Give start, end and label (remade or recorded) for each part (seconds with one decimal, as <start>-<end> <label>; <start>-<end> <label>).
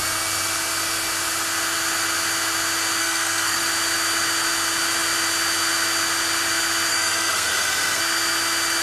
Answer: 0.0-3.0 recorded; 3.0-3.6 remade; 3.6-6.9 recorded; 6.9-8.0 remade; 8.0-8.8 recorded